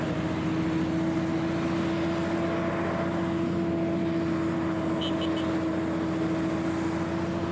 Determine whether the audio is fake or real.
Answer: real